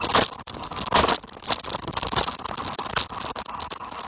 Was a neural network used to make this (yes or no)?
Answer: no